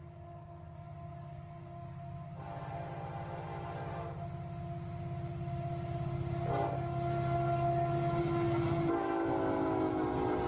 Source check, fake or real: real